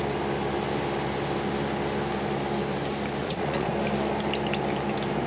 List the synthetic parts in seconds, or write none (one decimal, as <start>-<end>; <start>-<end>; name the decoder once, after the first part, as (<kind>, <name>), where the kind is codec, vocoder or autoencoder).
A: 3.2-3.7 (vocoder, Vocos)